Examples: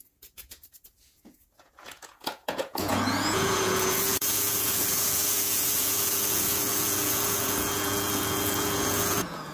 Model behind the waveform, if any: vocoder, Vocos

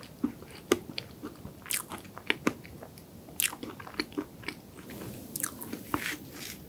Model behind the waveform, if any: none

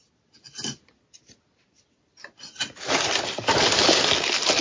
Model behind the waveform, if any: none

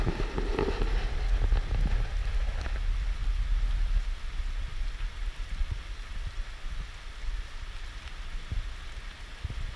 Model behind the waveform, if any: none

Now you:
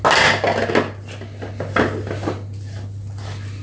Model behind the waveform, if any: none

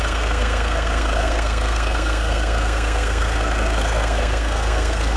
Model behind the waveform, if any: codec, SNAC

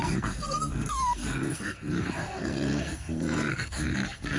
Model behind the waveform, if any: codec, SNAC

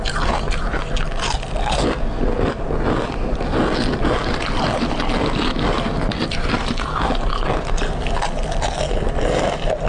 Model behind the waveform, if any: none